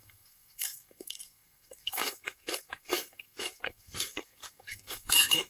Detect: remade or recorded remade